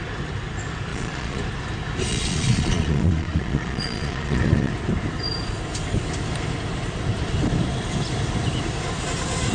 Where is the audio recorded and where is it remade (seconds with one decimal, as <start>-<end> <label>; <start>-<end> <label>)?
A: 0.0-0.9 recorded; 0.9-1.4 remade; 1.4-2.1 recorded; 2.1-4.7 remade; 4.7-9.5 recorded